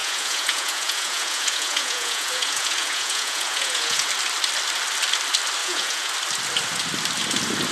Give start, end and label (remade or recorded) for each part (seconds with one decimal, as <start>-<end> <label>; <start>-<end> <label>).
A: 0.0-4.1 remade; 4.1-5.6 recorded; 5.6-6.1 remade; 6.1-7.7 recorded